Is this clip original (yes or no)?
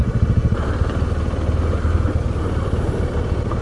no